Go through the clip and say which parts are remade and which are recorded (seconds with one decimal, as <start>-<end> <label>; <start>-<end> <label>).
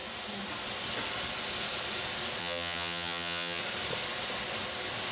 0.0-2.4 recorded; 2.4-3.6 remade; 3.6-5.1 recorded